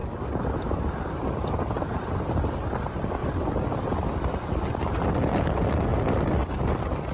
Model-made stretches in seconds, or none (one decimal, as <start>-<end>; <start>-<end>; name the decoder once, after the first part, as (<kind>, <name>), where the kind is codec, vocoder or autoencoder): 0.0-2.5 (vocoder, BigVGAN v2); 3.2-5.4; 5.9-6.4